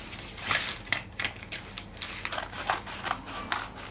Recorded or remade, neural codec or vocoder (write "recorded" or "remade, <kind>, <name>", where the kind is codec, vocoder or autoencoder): recorded